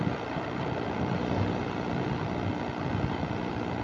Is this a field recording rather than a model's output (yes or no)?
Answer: yes